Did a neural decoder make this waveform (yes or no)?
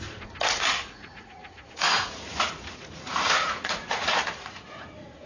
yes